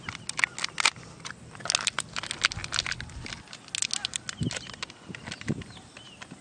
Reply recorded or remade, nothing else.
recorded